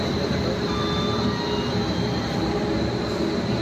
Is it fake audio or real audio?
real